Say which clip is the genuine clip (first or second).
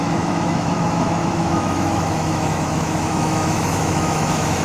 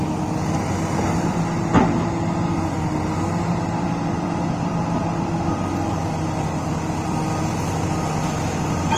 second